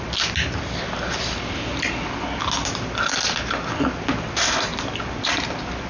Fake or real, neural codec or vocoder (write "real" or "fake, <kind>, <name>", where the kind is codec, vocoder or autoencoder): real